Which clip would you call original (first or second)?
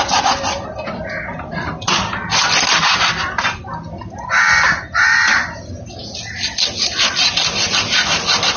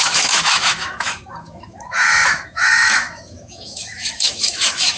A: first